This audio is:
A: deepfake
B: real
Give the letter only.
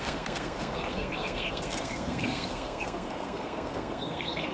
A